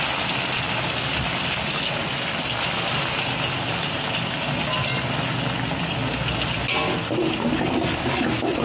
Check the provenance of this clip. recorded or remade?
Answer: recorded